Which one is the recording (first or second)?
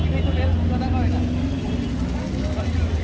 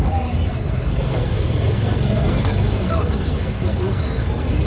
first